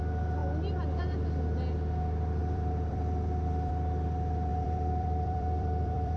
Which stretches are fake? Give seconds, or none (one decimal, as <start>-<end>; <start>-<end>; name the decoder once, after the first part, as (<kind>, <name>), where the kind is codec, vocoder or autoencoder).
2.4-3.7 (vocoder, BigVGAN v2); 4.5-6.2